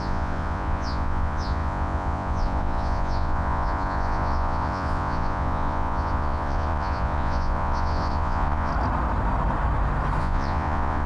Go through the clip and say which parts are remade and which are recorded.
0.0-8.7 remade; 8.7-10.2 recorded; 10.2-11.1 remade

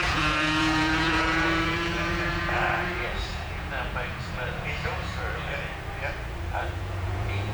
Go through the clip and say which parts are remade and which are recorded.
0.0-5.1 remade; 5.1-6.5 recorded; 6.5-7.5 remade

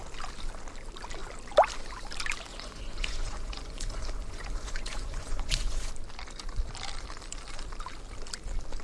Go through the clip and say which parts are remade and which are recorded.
0.0-2.5 recorded; 2.5-5.9 remade; 5.9-8.8 recorded

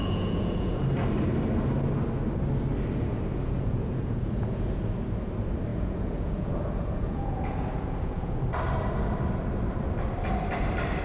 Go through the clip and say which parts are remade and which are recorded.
0.0-0.8 remade; 0.8-3.3 recorded; 3.3-4.8 remade; 4.8-5.7 recorded; 5.7-8.4 remade; 8.4-11.0 recorded

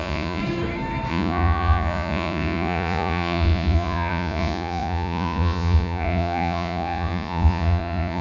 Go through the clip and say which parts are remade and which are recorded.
0.0-0.4 remade; 0.4-1.1 recorded; 1.1-8.2 remade